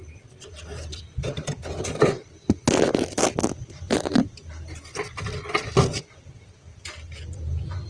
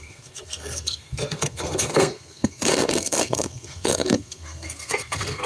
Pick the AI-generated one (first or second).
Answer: second